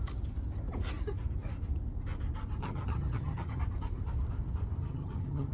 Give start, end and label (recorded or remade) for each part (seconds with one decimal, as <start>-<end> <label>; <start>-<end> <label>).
0.0-2.6 recorded; 2.6-3.6 remade; 3.6-4.8 recorded; 4.8-5.5 remade